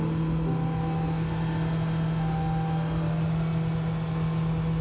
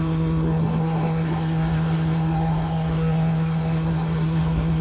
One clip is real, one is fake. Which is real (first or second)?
first